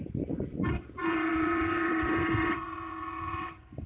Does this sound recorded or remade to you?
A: remade